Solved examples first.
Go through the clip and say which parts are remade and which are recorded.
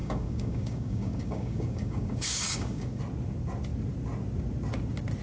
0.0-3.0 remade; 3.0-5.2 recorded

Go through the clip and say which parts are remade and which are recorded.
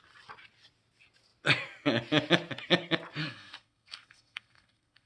0.0-3.2 recorded; 3.2-5.1 remade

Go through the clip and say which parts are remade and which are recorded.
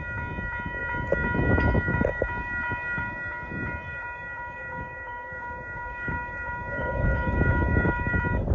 0.0-3.9 recorded; 3.9-8.1 remade; 8.1-8.5 recorded